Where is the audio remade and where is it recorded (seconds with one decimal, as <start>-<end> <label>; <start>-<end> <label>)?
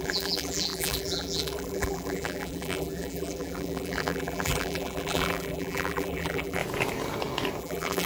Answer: 0.0-6.6 remade; 6.6-7.6 recorded; 7.6-8.1 remade